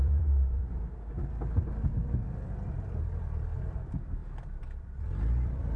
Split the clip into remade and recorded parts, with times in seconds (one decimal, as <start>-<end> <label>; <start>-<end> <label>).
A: 0.0-0.6 remade; 0.6-1.4 recorded; 1.4-5.8 remade